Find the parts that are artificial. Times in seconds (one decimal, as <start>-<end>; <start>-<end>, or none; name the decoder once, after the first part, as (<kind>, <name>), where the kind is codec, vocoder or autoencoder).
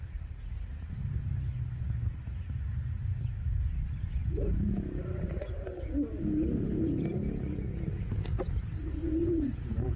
4.2-4.7 (vocoder, Vocos); 9.2-10.0